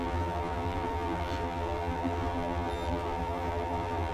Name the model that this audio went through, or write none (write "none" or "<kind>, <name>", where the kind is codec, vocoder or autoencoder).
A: vocoder, BigVGAN v2